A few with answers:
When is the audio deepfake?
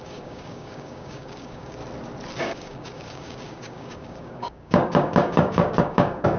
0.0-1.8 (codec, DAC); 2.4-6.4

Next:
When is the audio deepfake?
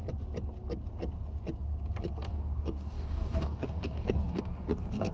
2.3-5.1 (codec, DAC)